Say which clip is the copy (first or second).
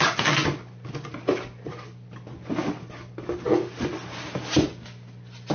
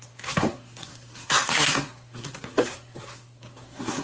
second